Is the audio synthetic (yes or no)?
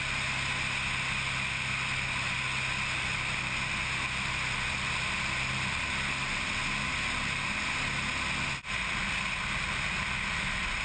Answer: no